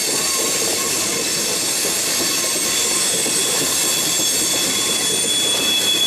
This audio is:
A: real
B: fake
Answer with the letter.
A